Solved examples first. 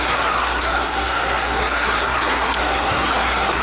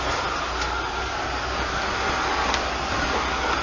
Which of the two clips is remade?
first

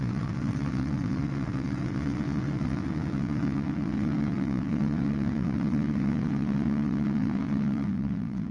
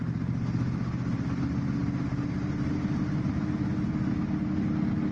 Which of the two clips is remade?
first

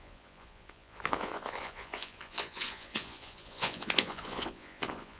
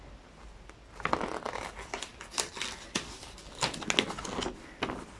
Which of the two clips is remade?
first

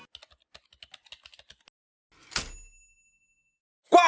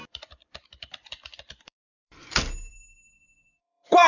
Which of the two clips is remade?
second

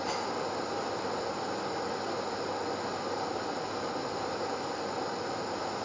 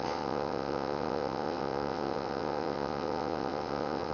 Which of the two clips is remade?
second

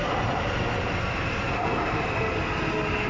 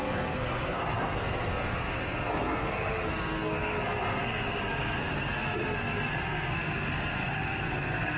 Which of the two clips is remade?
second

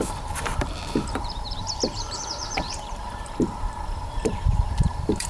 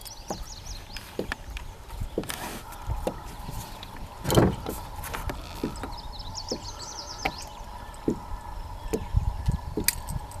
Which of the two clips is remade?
first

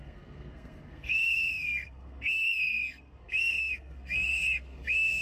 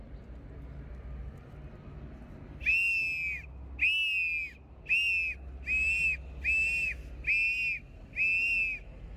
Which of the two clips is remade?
first